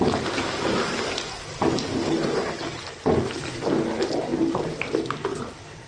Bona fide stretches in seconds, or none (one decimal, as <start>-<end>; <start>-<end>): 0.0-5.9